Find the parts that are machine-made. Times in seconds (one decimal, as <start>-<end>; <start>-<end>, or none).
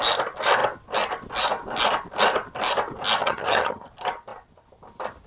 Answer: 3.2-3.9